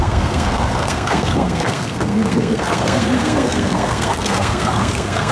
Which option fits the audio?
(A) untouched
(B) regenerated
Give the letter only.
B